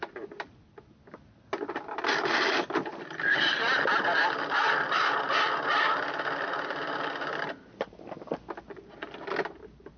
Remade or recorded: recorded